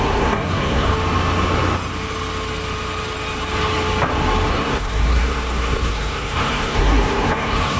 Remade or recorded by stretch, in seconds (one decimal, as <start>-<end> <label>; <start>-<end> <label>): 0.0-0.9 remade; 0.9-4.5 recorded; 4.5-7.8 remade

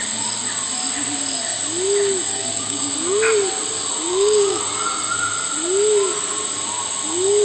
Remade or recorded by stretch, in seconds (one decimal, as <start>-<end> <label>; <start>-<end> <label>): 0.0-2.3 recorded; 2.3-2.9 remade; 2.9-4.1 recorded; 4.1-4.6 remade; 4.6-7.4 recorded

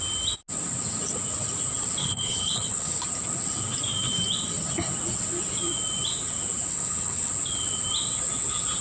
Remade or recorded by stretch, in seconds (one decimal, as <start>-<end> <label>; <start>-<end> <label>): 0.0-2.0 recorded; 2.0-3.0 remade; 3.0-6.7 recorded; 6.7-7.3 remade; 7.3-8.8 recorded